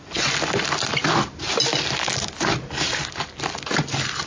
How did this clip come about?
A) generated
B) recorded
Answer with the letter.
B